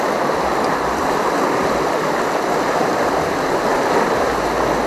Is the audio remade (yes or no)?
no